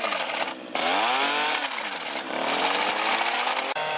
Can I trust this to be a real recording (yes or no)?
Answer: yes